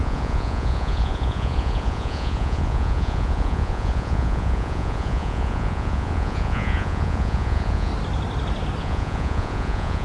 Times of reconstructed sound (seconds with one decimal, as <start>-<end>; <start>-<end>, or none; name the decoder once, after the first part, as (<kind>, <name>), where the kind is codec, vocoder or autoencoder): 0.0-7.9 (vocoder, Vocos); 8.8-10.0